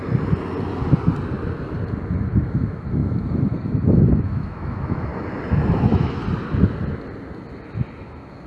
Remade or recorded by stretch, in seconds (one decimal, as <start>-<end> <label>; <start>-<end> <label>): 0.0-2.2 recorded; 2.2-5.1 remade; 5.1-5.7 recorded; 5.7-6.2 remade; 6.2-8.5 recorded